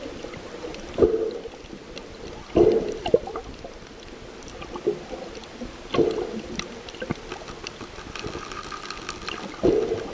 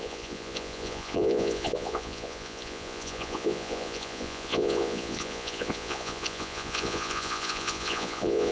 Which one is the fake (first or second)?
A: second